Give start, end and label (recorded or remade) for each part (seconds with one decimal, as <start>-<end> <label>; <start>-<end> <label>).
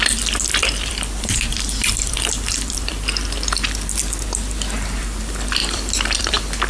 0.0-0.5 recorded; 0.5-3.9 remade; 3.9-5.6 recorded; 5.6-6.7 remade